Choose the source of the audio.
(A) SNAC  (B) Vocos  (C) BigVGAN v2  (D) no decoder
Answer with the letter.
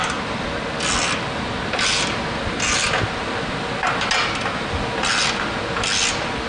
D